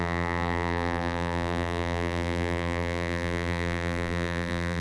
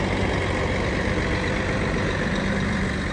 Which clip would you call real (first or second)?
second